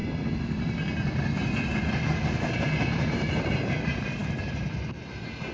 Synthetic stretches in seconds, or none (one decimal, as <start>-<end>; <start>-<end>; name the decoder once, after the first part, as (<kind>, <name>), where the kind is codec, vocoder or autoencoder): 3.3-5.5 (vocoder, BigVGAN v2)